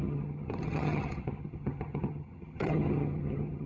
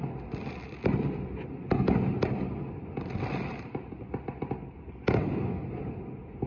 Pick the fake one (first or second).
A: first